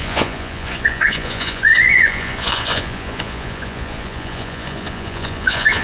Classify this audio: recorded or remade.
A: remade